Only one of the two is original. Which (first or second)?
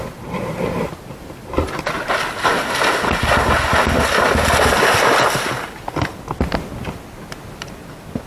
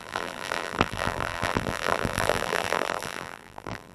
first